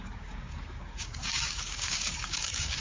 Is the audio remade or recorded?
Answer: remade